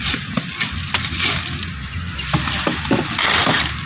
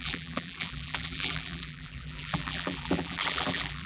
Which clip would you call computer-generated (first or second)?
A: second